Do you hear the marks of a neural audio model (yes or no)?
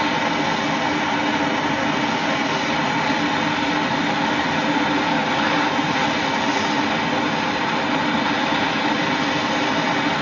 no